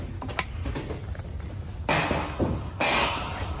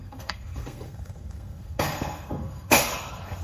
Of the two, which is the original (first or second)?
first